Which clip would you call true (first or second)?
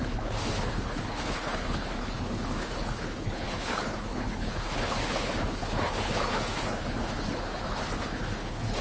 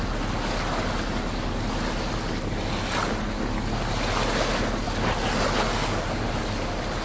second